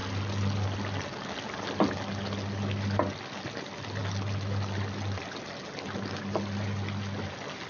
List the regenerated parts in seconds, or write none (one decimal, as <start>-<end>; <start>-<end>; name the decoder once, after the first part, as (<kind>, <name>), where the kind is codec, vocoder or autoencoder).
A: none